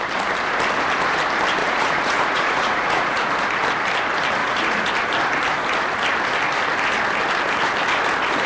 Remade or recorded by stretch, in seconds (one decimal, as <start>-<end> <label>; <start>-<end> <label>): 0.0-1.6 recorded; 1.6-3.3 remade; 3.3-4.4 recorded; 4.4-4.9 remade; 4.9-8.5 recorded